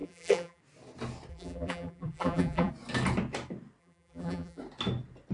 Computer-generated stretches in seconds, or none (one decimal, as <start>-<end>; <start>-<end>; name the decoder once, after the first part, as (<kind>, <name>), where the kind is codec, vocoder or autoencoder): 0.0-0.6 (vocoder, BigVGAN v2); 1.3-2.7; 3.8-4.6